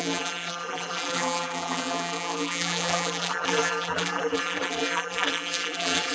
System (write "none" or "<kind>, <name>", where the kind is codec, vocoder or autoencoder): vocoder, BigVGAN v2